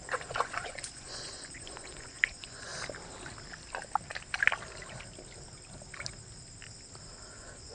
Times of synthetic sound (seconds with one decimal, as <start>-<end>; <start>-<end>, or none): 0.0-2.7; 7.3-7.7